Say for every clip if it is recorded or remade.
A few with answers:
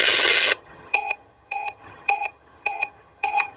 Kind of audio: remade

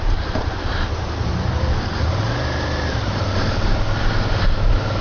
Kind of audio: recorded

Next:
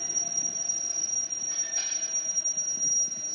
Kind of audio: recorded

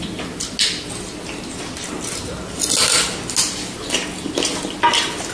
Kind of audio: recorded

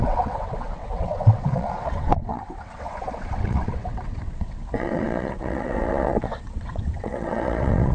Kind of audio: remade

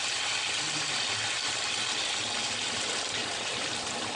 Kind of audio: recorded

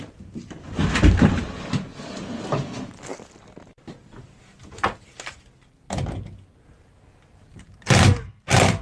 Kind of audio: recorded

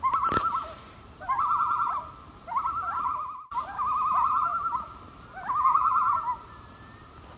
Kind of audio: recorded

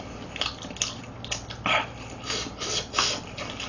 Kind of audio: recorded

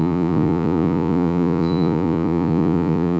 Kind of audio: remade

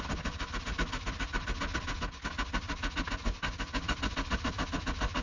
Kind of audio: recorded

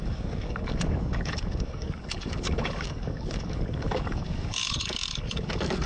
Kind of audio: remade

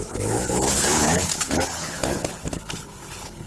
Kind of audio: remade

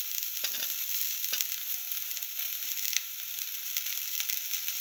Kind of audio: remade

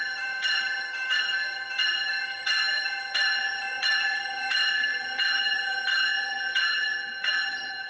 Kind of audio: remade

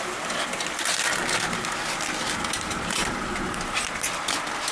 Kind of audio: recorded